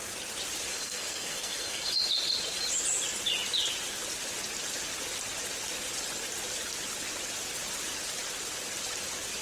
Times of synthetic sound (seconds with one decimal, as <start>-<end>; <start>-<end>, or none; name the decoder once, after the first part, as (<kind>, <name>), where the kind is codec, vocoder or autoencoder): 0.7-1.9 (codec, SNAC)

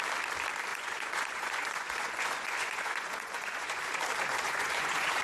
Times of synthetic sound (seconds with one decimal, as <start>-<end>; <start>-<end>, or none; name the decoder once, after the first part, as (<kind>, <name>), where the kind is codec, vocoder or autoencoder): 0.7-3.8 (vocoder, Vocos); 4.3-5.2